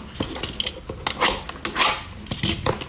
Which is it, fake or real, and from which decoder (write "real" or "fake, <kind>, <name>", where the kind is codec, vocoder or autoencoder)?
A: real